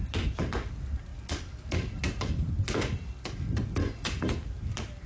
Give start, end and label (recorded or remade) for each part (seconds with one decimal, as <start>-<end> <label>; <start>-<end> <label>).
0.0-5.1 recorded